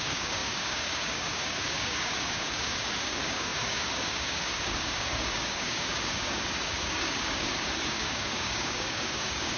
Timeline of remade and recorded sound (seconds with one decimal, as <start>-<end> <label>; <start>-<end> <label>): 0.0-9.6 remade